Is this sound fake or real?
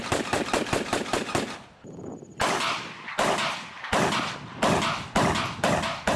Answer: real